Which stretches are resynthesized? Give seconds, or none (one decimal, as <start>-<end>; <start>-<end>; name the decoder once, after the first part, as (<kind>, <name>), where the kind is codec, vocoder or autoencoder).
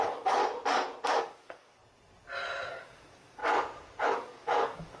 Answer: 0.0-0.4 (codec, DAC); 1.2-1.8; 2.7-3.4; 4.1-5.0